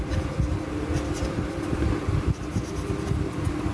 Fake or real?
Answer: fake